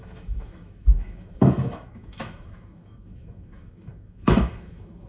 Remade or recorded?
remade